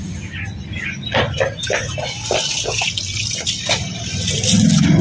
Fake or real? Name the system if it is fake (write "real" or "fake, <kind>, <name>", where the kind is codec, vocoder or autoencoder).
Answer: real